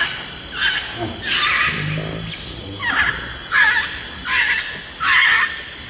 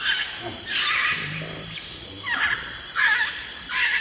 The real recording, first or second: first